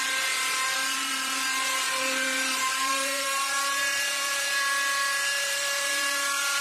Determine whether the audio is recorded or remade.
remade